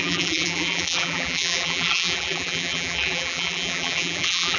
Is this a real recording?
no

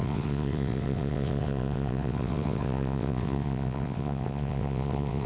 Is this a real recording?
no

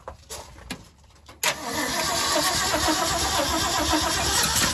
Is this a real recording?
yes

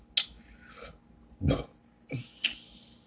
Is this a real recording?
yes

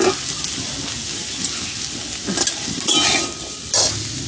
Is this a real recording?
yes